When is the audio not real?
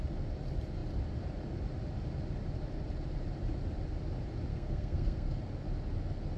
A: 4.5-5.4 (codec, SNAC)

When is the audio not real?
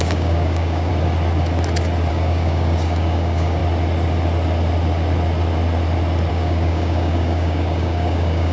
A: 0.0-0.9 (codec, DAC); 2.1-3.6; 6.3-8.5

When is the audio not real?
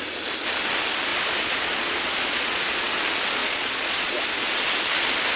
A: 1.1-2.9 (vocoder, Vocos); 3.4-4.2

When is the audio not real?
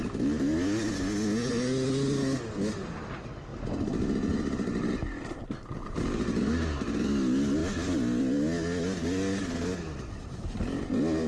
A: none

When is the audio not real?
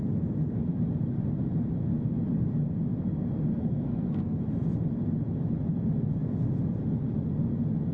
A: 3.5-4.4 (codec, SNAC)